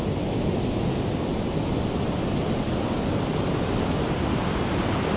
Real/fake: real